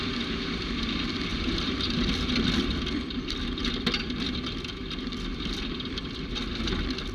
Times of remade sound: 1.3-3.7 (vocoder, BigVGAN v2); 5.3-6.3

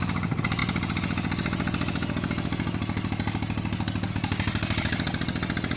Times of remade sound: none

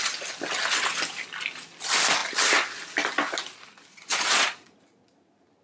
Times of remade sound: 3.9-4.7 (vocoder, Vocos)

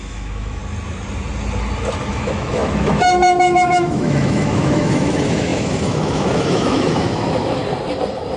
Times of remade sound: 0.0-0.6 (autoencoder, DAC-VAE); 2.1-7.6

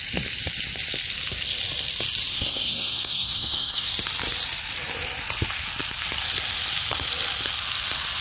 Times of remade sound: 2.3-3.9 (codec, SNAC)

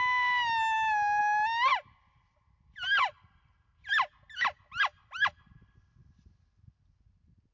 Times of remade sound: none